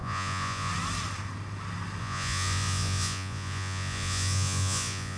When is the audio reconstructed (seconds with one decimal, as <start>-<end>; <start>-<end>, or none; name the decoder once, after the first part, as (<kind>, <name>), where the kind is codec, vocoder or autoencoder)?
0.0-0.7 (vocoder, Vocos); 2.0-5.2